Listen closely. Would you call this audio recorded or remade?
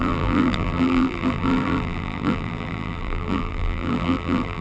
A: remade